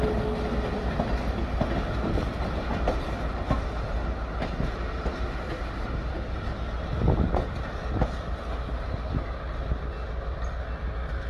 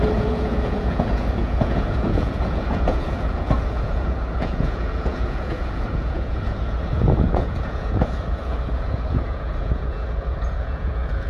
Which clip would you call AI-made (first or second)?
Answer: second